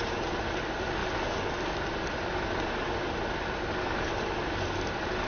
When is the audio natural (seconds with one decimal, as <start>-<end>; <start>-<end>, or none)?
0.5-5.3